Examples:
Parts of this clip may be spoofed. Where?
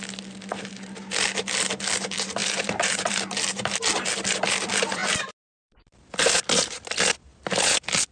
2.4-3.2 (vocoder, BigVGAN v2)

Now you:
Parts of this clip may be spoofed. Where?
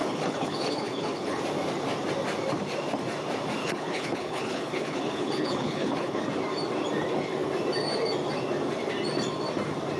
0.0-1.4 (codec, HILCodec); 3.6-6.2